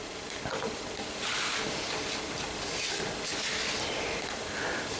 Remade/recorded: recorded